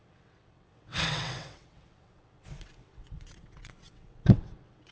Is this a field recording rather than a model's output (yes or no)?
no